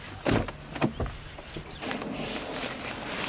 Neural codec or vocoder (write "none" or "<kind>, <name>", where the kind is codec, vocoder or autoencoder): none